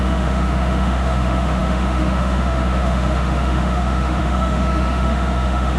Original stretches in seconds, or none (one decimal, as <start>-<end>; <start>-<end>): none